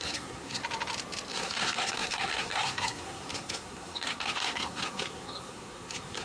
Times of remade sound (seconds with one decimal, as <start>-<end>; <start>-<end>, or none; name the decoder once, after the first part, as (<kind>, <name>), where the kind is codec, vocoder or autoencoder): 0.0-0.6 (codec, SNAC); 1.3-6.2